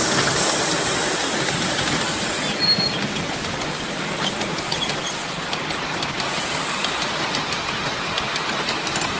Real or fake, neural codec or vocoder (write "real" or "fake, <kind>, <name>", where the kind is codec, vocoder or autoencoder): real